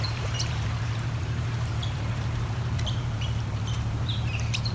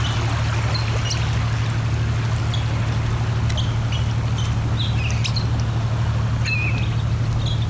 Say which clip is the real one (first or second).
second